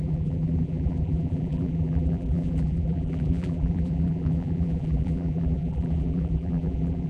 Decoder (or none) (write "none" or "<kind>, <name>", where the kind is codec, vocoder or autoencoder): vocoder, BigVGAN v2